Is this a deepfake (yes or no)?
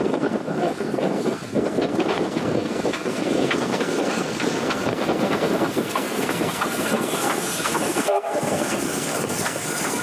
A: yes